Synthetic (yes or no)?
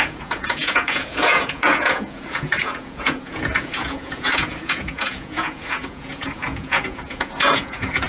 yes